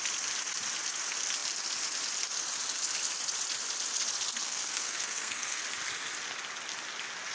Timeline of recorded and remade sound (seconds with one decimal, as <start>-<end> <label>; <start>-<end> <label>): 0.0-4.4 recorded; 4.4-5.6 remade; 5.6-7.3 recorded